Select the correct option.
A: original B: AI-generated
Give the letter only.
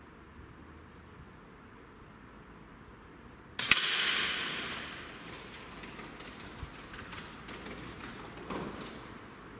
A